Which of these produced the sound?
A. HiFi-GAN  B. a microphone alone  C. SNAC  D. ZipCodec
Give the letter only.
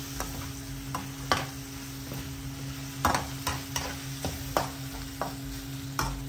B